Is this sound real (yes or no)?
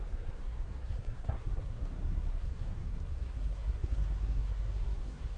no